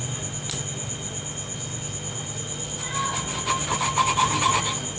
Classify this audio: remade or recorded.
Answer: recorded